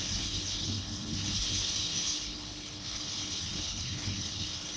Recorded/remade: remade